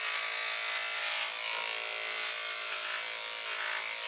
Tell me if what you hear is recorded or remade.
recorded